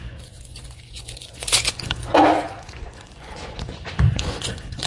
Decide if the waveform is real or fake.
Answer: fake